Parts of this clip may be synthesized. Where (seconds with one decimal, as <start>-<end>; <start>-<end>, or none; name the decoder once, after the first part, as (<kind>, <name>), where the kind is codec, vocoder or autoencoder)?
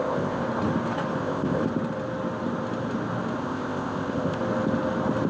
0.0-0.4 (codec, ZipCodec); 1.2-1.6; 3.4-4.4